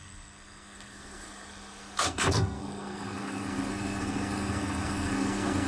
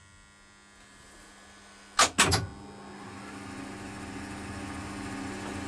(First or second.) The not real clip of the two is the first